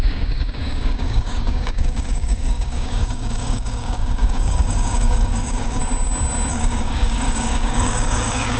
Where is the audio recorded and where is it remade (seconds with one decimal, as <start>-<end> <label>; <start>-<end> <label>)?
0.0-5.8 remade; 5.8-6.5 recorded; 6.5-8.6 remade